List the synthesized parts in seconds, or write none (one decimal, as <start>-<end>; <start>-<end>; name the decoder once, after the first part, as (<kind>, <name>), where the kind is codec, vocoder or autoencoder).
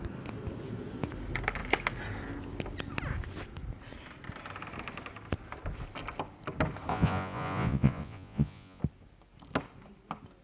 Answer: 6.9-8.8 (vocoder, Vocos)